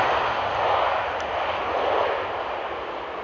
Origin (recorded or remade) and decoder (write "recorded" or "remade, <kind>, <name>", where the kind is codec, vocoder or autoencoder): recorded